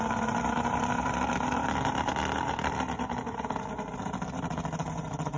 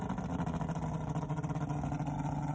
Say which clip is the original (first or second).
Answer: second